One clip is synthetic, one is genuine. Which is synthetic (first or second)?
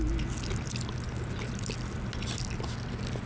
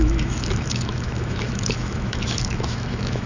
second